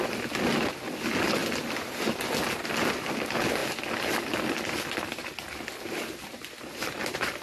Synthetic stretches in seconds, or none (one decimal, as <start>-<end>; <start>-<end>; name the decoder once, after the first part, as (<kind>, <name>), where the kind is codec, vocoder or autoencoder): none